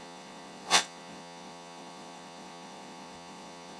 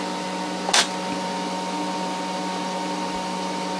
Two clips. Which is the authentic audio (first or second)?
second